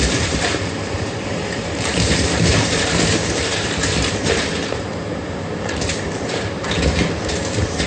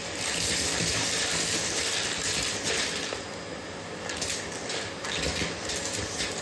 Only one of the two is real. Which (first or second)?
second